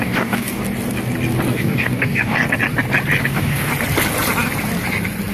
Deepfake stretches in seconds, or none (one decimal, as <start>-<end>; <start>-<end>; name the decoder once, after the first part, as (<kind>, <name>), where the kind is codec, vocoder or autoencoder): 0.0-0.6 (codec, DAC); 1.5-2.4; 3.2-3.7